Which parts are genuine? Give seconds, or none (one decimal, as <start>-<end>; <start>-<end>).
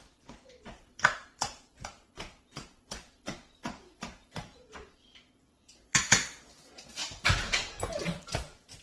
7.0-8.0